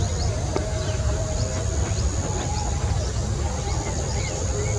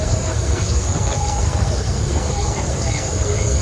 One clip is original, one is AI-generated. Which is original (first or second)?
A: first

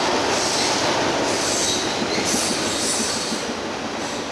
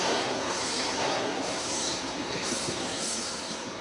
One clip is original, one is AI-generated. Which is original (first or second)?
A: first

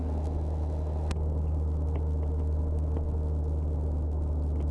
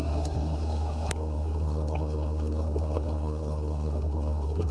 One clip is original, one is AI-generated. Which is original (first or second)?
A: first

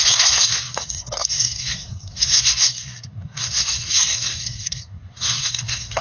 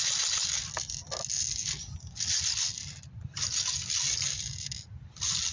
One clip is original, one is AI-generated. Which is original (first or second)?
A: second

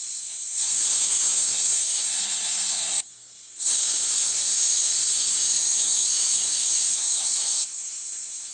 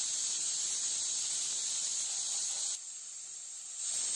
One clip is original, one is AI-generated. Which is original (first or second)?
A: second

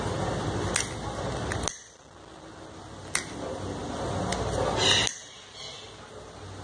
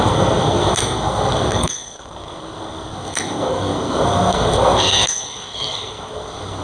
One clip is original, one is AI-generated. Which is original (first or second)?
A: first